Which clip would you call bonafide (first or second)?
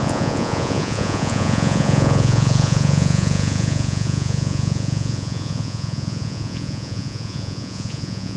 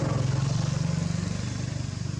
second